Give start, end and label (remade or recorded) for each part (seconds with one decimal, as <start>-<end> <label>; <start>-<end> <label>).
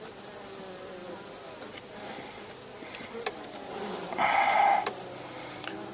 0.0-1.0 recorded; 1.0-4.1 remade; 4.1-5.9 recorded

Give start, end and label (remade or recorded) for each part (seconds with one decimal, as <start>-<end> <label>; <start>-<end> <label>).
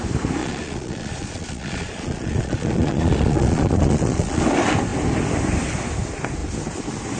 0.0-0.4 recorded; 0.4-4.4 remade; 4.4-7.2 recorded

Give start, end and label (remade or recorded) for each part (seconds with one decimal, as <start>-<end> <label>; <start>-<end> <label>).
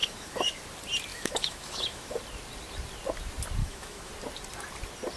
0.0-0.6 remade; 0.6-1.1 recorded; 1.1-2.2 remade; 2.2-3.6 recorded; 3.6-4.1 remade; 4.1-5.2 recorded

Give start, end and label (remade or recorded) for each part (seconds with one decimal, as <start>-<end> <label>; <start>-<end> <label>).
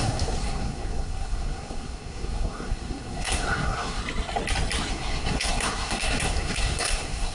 0.0-4.0 remade; 4.0-4.9 recorded; 4.9-7.3 remade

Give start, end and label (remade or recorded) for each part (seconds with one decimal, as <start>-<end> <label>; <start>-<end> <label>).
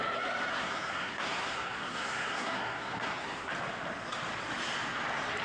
0.0-0.5 recorded; 0.5-3.5 remade; 3.5-5.4 recorded